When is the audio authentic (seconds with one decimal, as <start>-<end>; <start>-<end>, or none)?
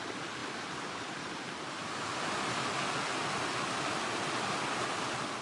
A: 0.0-0.4; 2.5-5.4